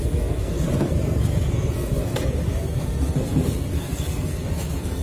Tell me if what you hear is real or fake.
fake